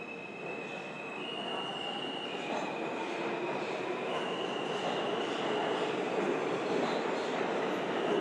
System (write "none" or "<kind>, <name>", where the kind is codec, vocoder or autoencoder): none